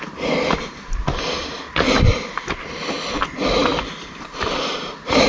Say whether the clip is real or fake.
real